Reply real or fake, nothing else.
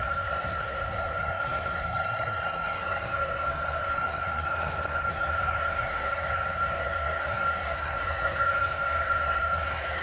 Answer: fake